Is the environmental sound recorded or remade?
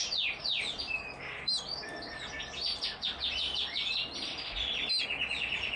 recorded